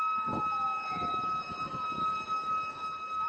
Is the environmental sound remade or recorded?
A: remade